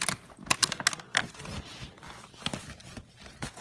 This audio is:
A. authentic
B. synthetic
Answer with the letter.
A